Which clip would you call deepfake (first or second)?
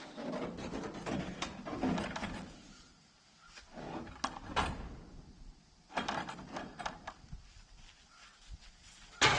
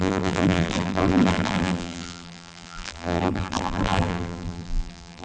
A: second